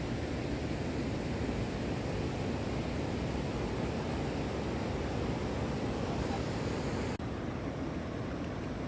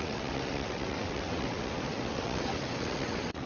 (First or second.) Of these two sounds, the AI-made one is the second